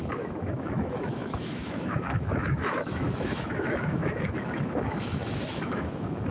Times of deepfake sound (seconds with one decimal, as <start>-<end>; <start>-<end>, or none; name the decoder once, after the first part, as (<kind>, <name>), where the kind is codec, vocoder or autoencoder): 0.0-6.3 (autoencoder, DAC-VAE)